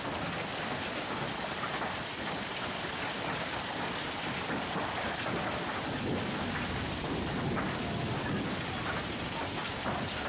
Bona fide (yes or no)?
yes